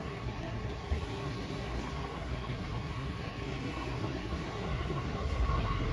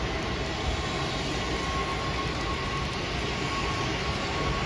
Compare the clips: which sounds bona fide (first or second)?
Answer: second